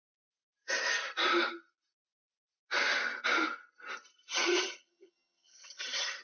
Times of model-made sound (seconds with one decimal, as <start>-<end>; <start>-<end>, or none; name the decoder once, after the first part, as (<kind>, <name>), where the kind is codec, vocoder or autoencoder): 4.3-6.2 (vocoder, HiFi-GAN)